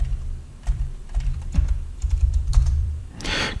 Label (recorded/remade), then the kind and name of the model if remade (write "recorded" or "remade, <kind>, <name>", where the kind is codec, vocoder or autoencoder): remade, vocoder, BigVGAN v2